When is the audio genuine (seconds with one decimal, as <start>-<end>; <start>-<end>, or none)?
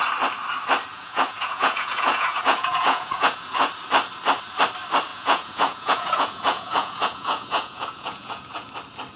0.0-0.9; 3.7-5.1; 8.7-9.2